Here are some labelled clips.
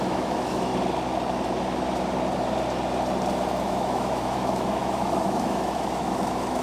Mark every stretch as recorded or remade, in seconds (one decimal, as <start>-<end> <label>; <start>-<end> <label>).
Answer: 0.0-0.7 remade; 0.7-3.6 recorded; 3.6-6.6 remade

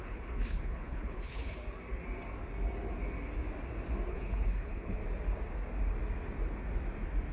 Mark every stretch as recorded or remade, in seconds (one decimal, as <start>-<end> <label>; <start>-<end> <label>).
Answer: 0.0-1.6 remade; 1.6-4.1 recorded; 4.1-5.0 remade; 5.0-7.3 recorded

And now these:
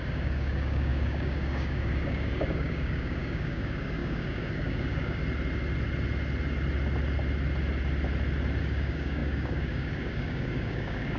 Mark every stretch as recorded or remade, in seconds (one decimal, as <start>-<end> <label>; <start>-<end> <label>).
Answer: 0.0-5.2 remade; 5.2-8.6 recorded; 8.6-11.2 remade

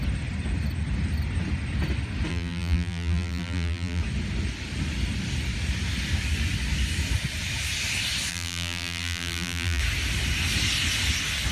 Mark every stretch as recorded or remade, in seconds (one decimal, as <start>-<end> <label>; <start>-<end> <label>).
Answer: 0.0-2.3 recorded; 2.3-4.0 remade; 4.0-8.3 recorded; 8.3-9.8 remade; 9.8-11.5 recorded

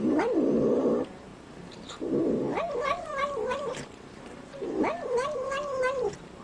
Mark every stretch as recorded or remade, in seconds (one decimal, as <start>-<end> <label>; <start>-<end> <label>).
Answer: 0.0-1.3 remade; 1.3-2.4 recorded; 2.4-6.4 remade

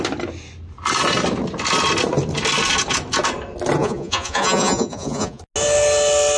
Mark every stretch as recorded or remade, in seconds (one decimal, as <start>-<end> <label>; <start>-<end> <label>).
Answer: 0.0-3.8 recorded; 3.8-5.4 remade; 5.4-6.4 recorded